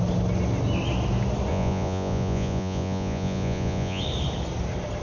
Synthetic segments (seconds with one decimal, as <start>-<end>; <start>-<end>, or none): 1.5-4.0